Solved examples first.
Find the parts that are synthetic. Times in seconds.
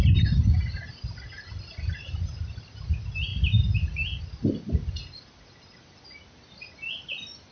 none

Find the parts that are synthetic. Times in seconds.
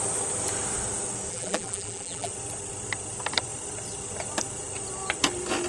1.3-2.3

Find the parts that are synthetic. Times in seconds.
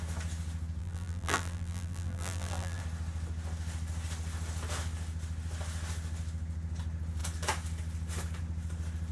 0.8-2.8